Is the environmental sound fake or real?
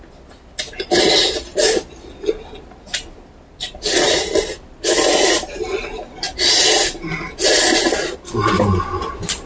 real